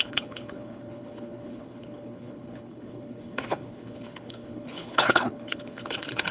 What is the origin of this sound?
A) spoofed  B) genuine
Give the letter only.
A